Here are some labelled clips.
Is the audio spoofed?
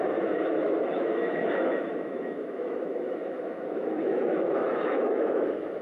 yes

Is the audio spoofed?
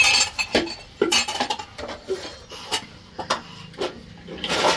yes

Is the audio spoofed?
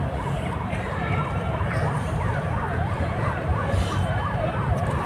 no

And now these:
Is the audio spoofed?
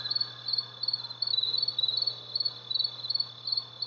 no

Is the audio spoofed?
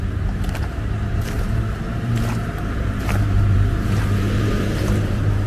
yes